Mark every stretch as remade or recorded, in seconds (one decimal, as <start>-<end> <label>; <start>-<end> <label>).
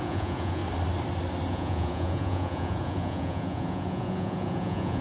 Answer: 0.0-0.6 remade; 0.6-1.5 recorded; 1.5-5.0 remade